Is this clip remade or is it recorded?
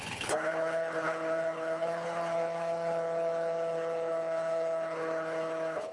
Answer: remade